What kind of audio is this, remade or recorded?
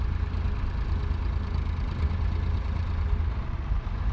recorded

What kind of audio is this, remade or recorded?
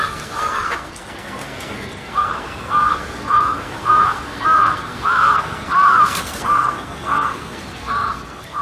remade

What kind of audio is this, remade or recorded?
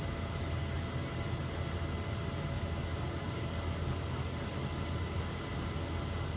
recorded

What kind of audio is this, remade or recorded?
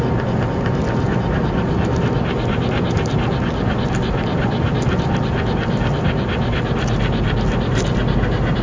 recorded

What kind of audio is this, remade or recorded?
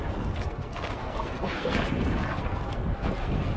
remade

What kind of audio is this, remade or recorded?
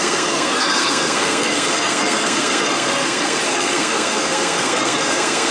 remade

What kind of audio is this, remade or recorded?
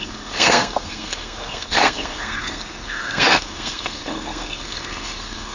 remade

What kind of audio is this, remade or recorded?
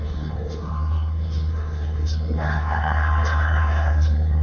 remade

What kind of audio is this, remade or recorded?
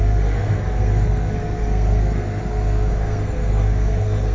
remade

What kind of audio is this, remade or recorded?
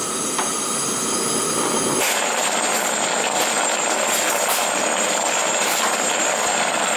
recorded